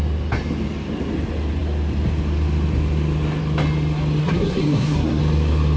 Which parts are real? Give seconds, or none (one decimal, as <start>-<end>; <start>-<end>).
0.0-4.2; 5.2-5.8

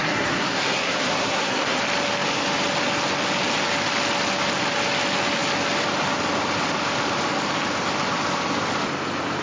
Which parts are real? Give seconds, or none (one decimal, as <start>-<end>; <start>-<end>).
1.8-9.4

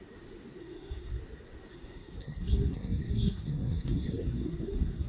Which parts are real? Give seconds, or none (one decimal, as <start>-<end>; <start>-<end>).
0.0-0.6; 1.2-1.7

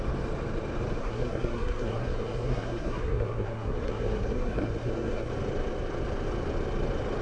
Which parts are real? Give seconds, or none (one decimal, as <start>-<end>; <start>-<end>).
0.0-1.0; 5.3-7.2

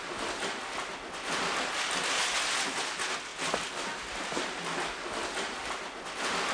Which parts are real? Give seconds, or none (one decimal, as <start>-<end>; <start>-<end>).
0.0-6.5

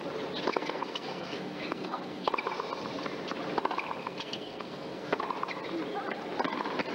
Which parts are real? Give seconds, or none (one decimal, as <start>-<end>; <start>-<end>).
0.0-0.5; 2.3-4.0; 5.2-6.9

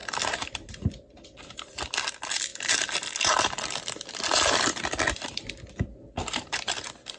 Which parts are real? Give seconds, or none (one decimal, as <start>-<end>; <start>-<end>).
0.0-7.2

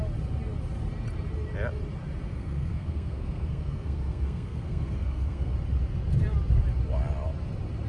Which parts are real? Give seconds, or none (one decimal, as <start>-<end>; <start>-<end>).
0.0-2.3; 5.5-7.9